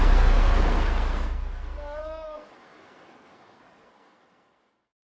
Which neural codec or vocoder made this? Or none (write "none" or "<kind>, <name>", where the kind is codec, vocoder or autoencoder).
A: codec, SNAC